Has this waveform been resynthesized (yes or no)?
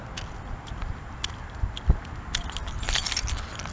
no